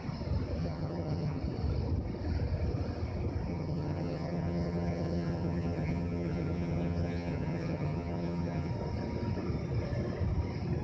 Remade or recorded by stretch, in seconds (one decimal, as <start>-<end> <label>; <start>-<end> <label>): 0.0-0.6 recorded; 0.6-1.4 remade; 1.4-3.5 recorded; 3.5-8.7 remade; 8.7-10.8 recorded